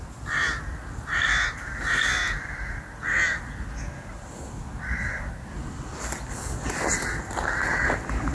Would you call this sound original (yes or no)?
yes